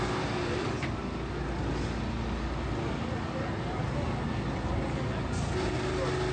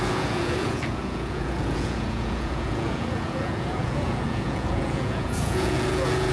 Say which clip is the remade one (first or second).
second